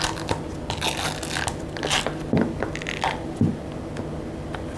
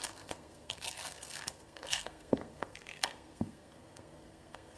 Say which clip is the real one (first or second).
first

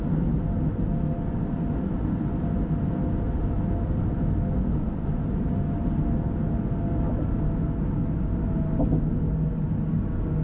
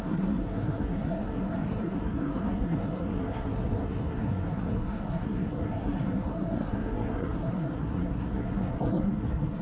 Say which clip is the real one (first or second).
first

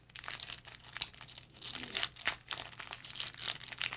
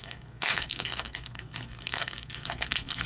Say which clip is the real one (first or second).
first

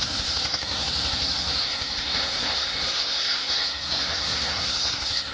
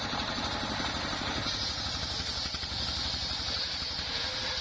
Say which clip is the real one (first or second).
second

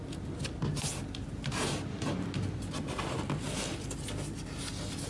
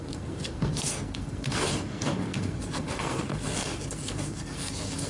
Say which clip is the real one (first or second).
first